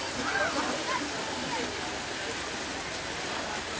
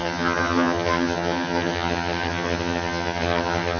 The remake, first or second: second